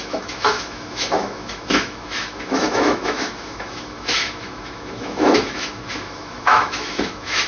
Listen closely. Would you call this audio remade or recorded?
remade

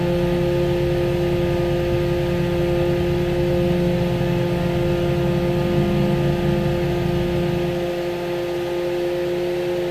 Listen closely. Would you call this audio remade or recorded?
recorded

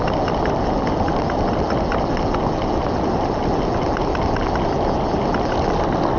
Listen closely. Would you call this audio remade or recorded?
recorded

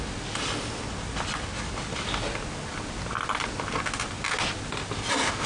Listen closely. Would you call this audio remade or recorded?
recorded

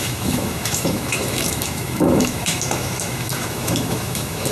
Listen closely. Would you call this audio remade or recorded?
remade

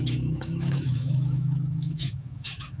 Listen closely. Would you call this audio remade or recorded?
remade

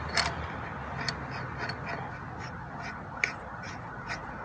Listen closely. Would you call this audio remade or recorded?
recorded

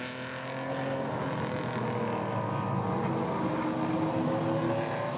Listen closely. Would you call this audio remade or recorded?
recorded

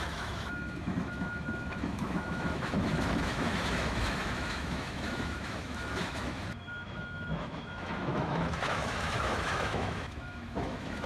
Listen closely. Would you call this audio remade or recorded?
remade